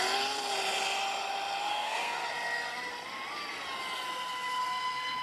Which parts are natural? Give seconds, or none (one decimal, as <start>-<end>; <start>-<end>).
0.0-1.7; 2.3-5.2